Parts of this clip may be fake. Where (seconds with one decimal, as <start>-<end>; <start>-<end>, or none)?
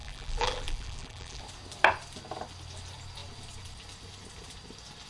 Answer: 0.0-1.4